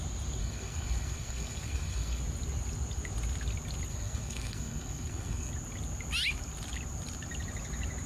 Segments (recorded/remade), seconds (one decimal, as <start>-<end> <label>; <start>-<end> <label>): 0.0-0.4 recorded; 0.4-2.2 remade; 2.2-3.9 recorded; 3.9-5.5 remade; 5.5-8.1 recorded